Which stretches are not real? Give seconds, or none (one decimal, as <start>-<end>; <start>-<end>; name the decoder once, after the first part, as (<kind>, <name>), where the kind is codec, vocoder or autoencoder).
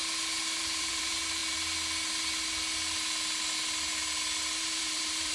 0.6-1.4 (vocoder, BigVGAN v2); 4.6-5.3